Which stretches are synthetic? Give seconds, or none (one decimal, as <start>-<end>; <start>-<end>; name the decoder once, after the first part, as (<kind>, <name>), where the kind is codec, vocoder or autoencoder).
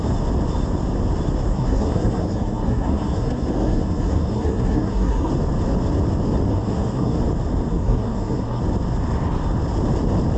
1.5-5.3 (codec, SNAC); 6.5-7.2; 7.7-8.6